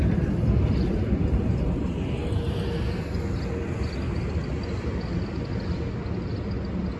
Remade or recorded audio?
recorded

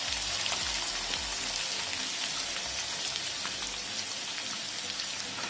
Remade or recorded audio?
recorded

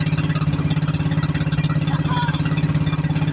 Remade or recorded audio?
recorded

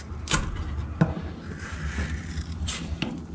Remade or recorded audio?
recorded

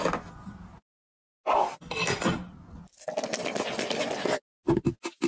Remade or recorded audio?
recorded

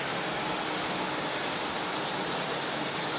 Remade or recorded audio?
recorded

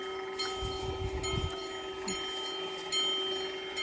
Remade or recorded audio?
recorded